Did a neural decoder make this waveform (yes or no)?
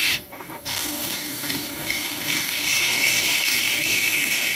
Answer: yes